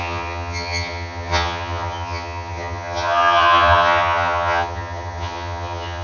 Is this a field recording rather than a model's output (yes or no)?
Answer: no